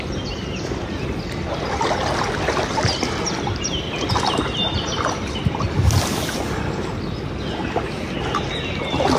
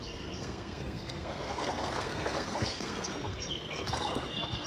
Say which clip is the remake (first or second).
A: second